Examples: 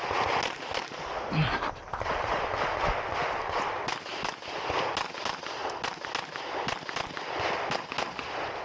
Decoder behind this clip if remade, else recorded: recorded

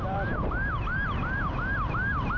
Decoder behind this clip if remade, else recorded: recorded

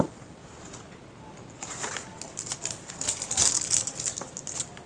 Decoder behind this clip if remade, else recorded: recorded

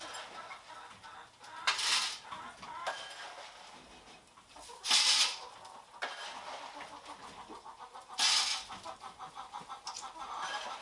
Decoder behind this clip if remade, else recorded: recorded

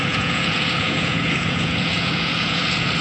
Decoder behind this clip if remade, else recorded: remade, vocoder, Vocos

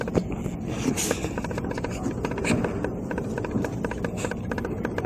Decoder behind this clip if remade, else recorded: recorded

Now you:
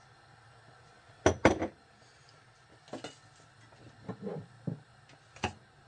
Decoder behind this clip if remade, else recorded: recorded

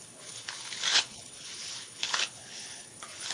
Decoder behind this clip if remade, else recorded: remade, codec, HILCodec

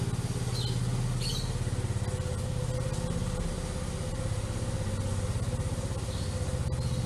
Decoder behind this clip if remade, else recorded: recorded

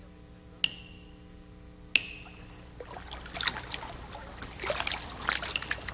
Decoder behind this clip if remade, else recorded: recorded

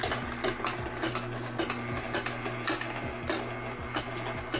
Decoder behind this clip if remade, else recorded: recorded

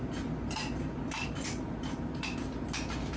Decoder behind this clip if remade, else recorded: recorded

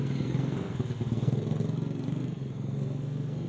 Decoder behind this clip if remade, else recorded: remade, codec, SNAC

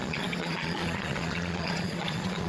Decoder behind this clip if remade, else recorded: remade, vocoder, Vocos